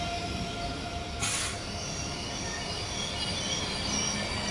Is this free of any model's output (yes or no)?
yes